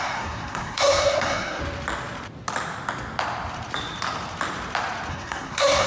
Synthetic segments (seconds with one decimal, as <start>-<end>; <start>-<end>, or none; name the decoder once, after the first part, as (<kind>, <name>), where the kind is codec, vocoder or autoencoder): 0.0-1.6 (codec, SNAC); 5.1-5.9